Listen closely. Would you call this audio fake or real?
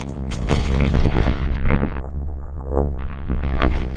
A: fake